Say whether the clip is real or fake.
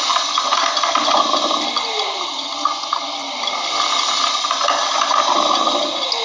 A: real